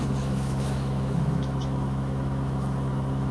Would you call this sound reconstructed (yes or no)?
yes